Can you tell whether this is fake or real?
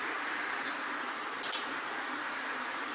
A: real